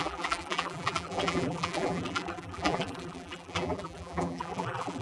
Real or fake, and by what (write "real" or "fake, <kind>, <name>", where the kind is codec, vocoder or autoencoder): fake, vocoder, BigVGAN v2